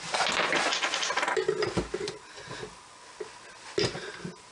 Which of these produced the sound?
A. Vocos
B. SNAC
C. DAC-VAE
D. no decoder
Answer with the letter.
D